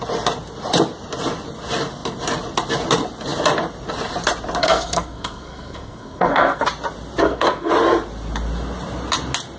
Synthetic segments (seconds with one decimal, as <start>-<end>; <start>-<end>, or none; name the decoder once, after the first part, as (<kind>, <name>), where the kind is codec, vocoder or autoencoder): 4.6-6.6 (codec, SNAC); 7.2-7.7